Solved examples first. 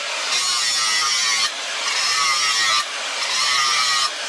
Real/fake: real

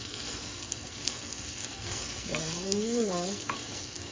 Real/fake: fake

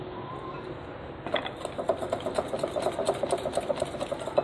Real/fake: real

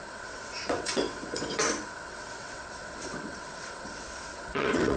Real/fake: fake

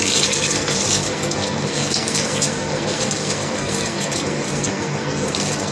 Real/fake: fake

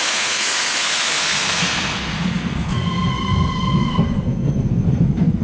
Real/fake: fake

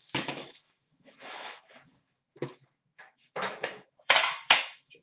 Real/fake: fake